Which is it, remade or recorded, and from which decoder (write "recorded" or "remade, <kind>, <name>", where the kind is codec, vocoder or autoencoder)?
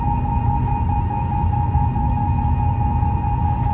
recorded